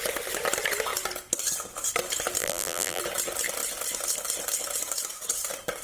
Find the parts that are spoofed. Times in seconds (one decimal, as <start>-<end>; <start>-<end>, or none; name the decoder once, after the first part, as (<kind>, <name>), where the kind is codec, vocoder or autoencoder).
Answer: 2.4-3.0 (vocoder, BigVGAN v2)